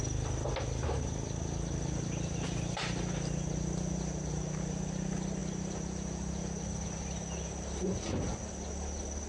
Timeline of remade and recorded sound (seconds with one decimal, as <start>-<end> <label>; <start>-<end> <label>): 0.0-9.3 recorded

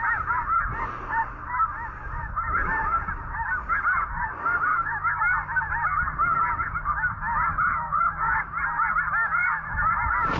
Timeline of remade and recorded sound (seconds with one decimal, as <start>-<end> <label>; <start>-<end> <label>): 0.0-4.7 recorded; 4.7-5.2 remade; 5.2-7.5 recorded; 7.5-8.4 remade; 8.4-10.4 recorded

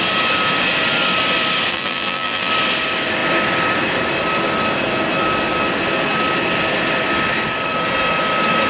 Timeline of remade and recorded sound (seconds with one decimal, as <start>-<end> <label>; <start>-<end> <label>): 0.0-1.7 recorded; 1.7-2.5 remade; 2.5-8.7 recorded

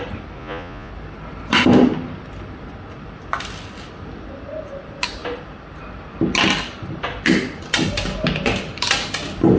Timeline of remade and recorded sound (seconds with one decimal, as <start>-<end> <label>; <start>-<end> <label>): 0.0-0.4 recorded; 0.4-0.9 remade; 0.9-9.6 recorded

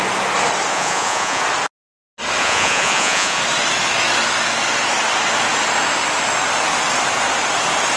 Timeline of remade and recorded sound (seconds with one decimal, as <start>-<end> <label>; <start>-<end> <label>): 0.0-0.7 recorded; 0.7-1.4 remade; 1.4-2.4 recorded; 2.4-3.4 remade; 3.4-8.0 recorded

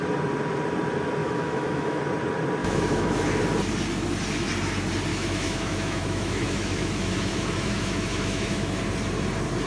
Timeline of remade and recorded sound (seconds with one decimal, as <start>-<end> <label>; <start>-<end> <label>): 0.0-1.2 recorded; 1.2-2.0 remade; 2.0-2.6 recorded; 2.6-3.3 remade; 3.3-5.1 recorded; 5.1-8.8 remade; 8.8-9.7 recorded

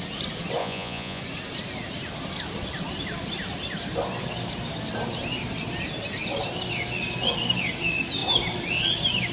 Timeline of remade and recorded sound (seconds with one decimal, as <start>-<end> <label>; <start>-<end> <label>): 0.0-0.6 recorded; 0.6-1.2 remade; 1.2-9.3 recorded